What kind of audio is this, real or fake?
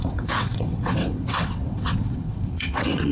fake